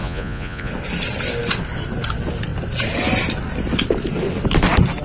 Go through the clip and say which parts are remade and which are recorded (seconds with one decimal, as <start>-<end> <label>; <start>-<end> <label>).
0.0-0.7 remade; 0.7-5.0 recorded